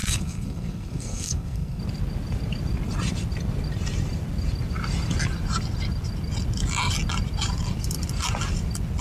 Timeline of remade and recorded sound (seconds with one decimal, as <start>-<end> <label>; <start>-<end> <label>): 0.0-1.8 remade; 1.8-9.0 recorded